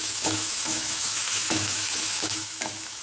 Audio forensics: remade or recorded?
remade